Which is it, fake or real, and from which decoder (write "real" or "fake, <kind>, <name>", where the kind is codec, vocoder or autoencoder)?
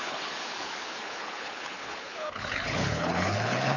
fake, codec, HILCodec